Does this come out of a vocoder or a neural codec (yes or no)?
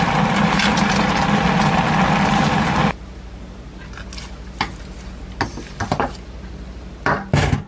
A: no